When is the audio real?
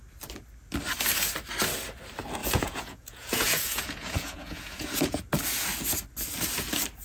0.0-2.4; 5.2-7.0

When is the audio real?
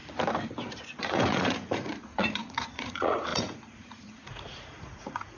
0.0-1.0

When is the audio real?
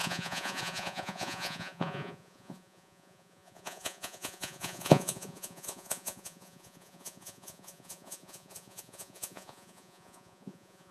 none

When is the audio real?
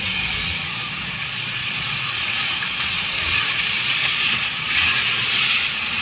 none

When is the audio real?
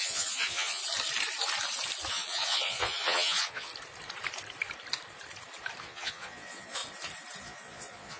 0.8-2.1; 3.7-5.8; 6.8-7.4